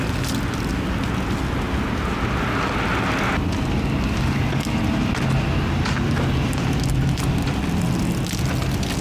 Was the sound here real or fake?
real